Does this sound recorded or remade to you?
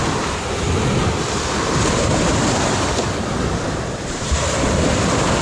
recorded